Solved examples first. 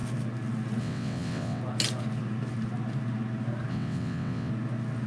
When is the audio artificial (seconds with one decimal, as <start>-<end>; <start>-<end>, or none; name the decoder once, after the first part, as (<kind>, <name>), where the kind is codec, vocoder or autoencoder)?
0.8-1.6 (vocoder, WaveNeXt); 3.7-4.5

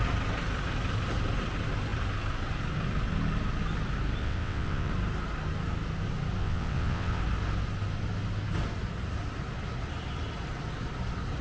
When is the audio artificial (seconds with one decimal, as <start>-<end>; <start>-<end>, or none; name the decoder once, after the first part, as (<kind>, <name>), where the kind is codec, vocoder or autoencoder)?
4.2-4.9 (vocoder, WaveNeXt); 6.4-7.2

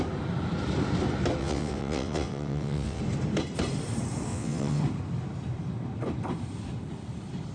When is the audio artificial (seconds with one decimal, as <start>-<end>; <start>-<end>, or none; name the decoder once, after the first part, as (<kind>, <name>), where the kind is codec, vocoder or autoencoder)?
1.4-3.0 (vocoder, WaveNeXt); 4.3-4.8